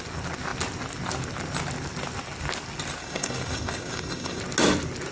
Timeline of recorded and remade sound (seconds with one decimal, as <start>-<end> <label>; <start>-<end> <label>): 0.0-3.0 recorded; 3.0-4.4 remade; 4.4-5.1 recorded